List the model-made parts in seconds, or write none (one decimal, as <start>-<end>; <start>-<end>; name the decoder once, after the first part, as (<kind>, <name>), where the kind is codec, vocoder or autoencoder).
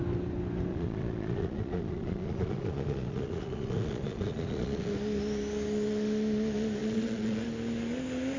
0.7-4.9 (vocoder, Vocos); 6.8-7.4